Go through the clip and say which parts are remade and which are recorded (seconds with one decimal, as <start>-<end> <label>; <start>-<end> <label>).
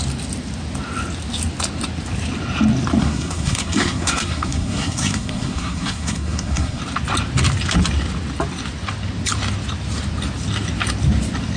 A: 0.0-3.0 recorded; 3.0-6.8 remade; 6.8-11.6 recorded